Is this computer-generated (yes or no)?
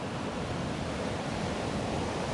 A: no